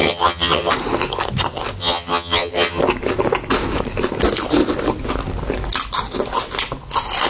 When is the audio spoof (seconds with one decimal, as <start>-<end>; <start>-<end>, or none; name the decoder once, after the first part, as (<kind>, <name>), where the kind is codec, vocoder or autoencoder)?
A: 0.0-0.7 (vocoder, HiFi-GAN); 1.8-2.8